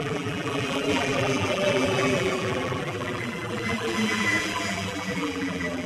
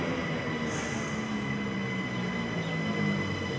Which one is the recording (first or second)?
second